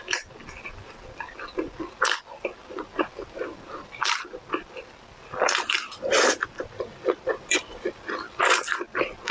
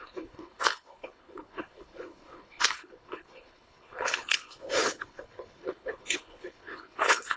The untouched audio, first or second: first